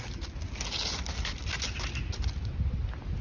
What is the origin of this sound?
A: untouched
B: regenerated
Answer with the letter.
A